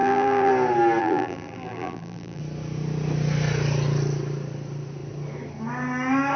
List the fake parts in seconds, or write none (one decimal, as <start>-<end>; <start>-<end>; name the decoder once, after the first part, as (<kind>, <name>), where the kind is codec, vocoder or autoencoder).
0.0-0.5 (vocoder, BigVGAN v2); 1.0-2.4